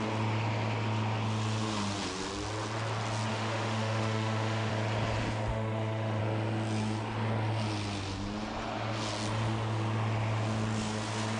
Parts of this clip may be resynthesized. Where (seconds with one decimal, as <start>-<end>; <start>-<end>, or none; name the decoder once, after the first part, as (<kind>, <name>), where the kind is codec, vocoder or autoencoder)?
3.3-4.7 (autoencoder, DAC-VAE); 5.5-6.2